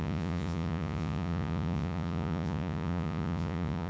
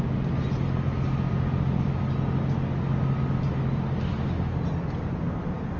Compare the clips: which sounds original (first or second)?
second